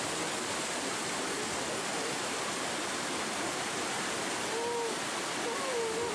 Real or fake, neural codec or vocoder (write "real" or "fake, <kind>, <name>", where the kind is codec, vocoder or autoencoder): real